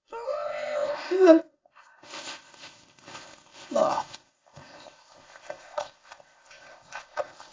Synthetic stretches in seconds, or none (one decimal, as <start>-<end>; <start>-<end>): 0.0-7.5